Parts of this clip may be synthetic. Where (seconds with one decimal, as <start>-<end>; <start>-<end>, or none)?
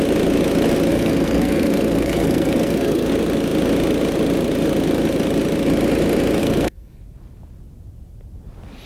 0.9-3.1; 6.4-7.0